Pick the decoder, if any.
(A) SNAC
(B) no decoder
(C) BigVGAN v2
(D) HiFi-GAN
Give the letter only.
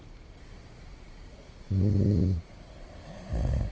B